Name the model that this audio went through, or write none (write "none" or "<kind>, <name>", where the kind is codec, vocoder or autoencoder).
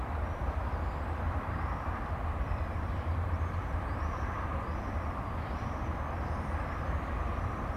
vocoder, BigVGAN v2